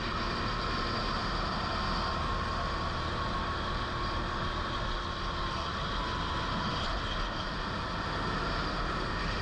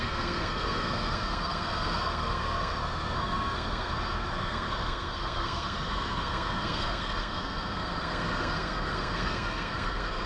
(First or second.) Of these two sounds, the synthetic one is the second